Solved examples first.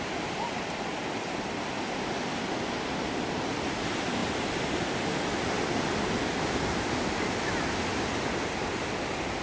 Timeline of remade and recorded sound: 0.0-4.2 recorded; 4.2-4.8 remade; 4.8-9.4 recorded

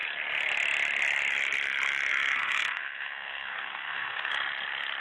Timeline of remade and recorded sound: 0.0-2.1 recorded; 2.1-4.3 remade; 4.3-5.0 recorded

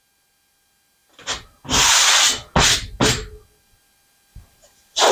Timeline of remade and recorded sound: 0.0-4.3 recorded; 4.3-5.1 remade

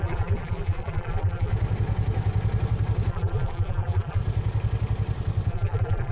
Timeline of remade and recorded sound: 0.0-1.5 remade; 1.5-3.1 recorded; 3.1-4.2 remade; 4.2-5.5 recorded; 5.5-6.1 remade